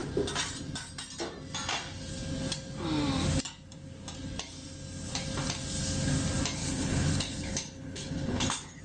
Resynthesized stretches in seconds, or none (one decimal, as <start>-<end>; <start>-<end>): 6.6-8.8